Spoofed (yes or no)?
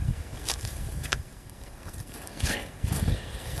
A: yes